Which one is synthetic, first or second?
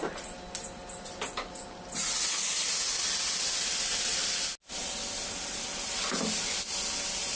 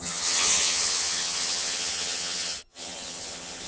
second